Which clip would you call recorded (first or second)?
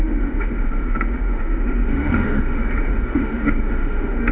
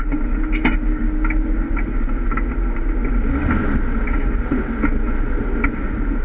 second